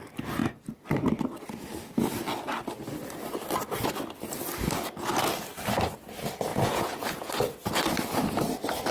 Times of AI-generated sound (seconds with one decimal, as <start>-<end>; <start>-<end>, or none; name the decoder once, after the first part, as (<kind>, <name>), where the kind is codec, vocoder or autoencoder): 6.5-7.3 (vocoder, Vocos)